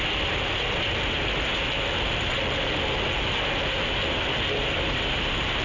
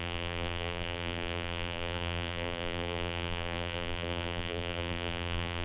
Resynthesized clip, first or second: second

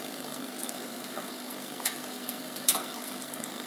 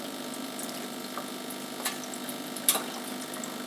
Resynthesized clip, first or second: first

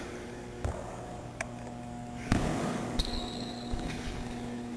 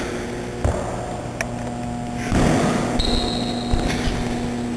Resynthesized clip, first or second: first